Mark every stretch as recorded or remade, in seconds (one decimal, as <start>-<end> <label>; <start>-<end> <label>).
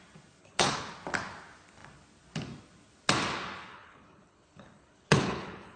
0.0-0.4 recorded; 0.4-0.9 remade; 0.9-3.7 recorded; 3.7-5.8 remade